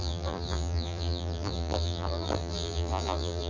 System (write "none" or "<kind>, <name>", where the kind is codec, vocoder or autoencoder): vocoder, BigVGAN v2